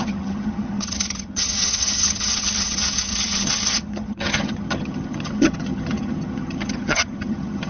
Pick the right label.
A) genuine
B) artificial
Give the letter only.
B